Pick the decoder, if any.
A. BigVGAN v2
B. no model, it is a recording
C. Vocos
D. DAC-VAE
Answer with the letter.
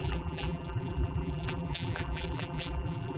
A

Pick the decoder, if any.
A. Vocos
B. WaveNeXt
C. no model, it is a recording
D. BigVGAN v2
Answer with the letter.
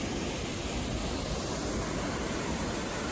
C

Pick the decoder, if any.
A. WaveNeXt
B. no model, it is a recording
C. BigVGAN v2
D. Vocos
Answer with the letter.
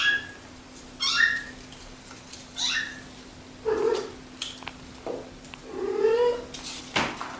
B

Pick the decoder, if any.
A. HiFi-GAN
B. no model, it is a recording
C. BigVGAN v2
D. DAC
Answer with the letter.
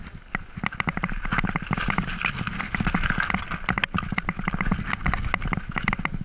B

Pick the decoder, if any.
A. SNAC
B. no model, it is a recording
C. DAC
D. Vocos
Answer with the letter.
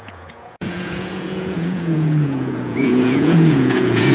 D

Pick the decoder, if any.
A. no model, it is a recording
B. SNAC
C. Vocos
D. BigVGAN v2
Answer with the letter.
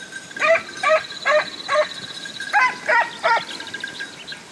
D